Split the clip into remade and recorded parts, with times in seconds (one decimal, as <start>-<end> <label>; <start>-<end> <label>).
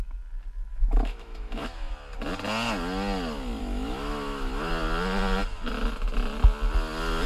0.0-0.7 recorded; 0.7-1.9 remade; 1.9-3.6 recorded; 3.6-4.7 remade; 4.7-7.3 recorded